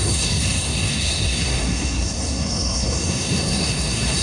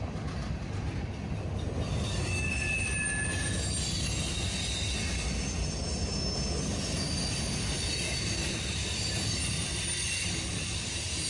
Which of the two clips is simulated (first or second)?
first